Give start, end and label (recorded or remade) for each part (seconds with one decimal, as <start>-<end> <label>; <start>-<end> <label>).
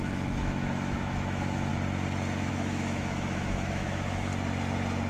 0.0-1.7 remade; 1.7-2.5 recorded; 2.5-4.3 remade; 4.3-5.1 recorded